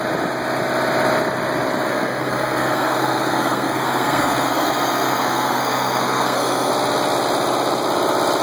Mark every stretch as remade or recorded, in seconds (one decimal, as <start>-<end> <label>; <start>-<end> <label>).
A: 0.0-1.9 recorded; 1.9-6.7 remade; 6.7-8.4 recorded